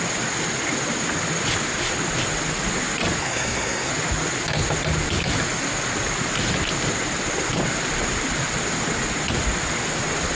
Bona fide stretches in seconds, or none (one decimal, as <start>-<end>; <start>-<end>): 0.0-3.2; 3.9-10.3